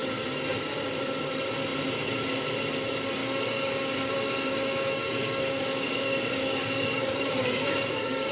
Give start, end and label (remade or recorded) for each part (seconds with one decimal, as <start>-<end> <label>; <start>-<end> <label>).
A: 0.0-3.2 recorded; 3.2-8.3 remade